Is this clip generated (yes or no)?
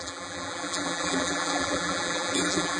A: yes